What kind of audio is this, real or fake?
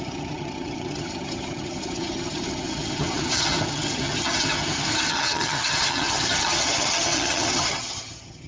fake